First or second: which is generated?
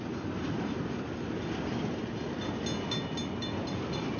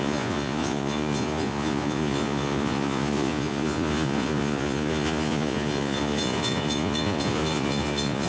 second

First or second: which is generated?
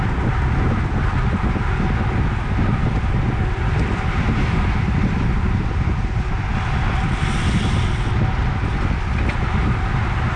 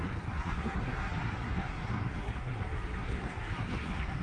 second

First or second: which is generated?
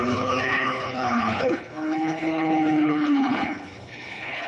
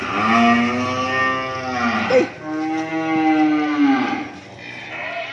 first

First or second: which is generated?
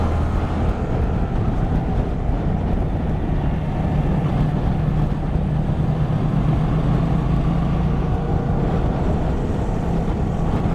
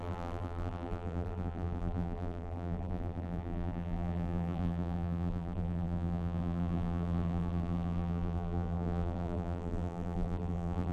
second